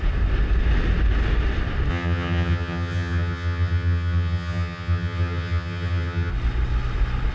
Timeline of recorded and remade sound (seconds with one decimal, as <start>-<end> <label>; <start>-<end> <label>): 0.0-1.9 recorded; 1.9-6.3 remade; 6.3-7.3 recorded